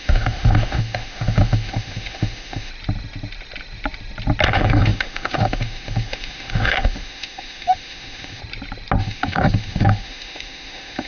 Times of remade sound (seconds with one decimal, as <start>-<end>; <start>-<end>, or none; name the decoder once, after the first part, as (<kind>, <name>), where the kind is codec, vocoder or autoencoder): 0.0-2.7 (autoencoder, DAC-VAE); 4.5-8.4; 9.0-11.1